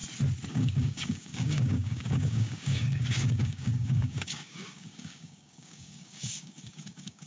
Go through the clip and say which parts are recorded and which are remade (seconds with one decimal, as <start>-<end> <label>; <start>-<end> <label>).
0.0-0.5 recorded; 0.5-7.3 remade